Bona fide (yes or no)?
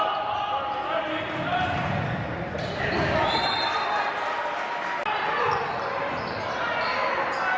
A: yes